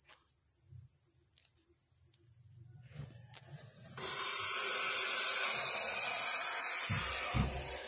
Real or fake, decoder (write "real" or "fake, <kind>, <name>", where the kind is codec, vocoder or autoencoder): real